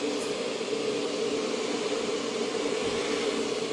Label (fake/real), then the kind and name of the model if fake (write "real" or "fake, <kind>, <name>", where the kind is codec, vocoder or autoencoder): real